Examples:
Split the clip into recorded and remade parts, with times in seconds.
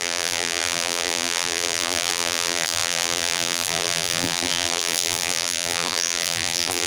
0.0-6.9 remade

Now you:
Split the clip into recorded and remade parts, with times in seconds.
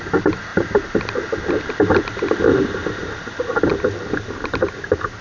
0.0-0.5 remade; 0.5-1.6 recorded; 1.6-5.2 remade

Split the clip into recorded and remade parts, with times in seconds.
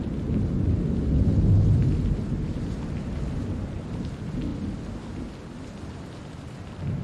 0.0-1.3 remade; 1.3-2.1 recorded; 2.1-4.5 remade; 4.5-5.8 recorded; 5.8-7.0 remade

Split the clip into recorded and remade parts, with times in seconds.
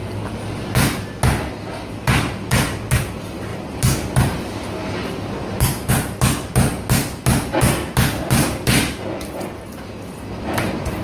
0.0-11.0 recorded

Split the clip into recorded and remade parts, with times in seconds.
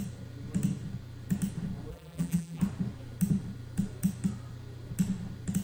0.0-1.9 recorded; 1.9-2.6 remade; 2.6-5.6 recorded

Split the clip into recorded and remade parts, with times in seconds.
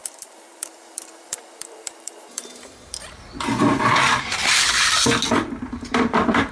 0.0-4.4 remade; 4.4-5.6 recorded; 5.6-6.5 remade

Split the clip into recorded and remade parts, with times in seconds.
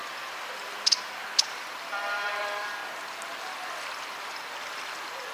0.0-1.5 recorded; 1.5-2.8 remade; 2.8-3.4 recorded; 3.4-5.3 remade